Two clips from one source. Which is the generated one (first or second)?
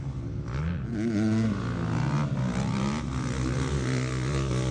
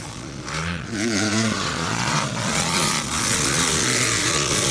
second